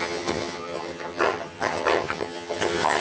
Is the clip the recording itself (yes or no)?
no